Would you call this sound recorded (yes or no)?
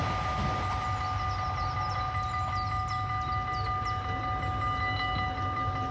yes